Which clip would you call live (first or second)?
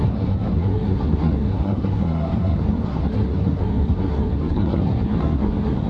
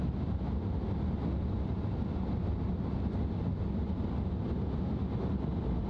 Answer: second